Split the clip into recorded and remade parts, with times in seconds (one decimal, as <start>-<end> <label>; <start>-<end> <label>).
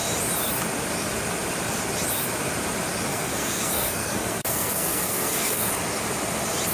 0.0-3.1 recorded; 3.1-5.7 remade; 5.7-6.7 recorded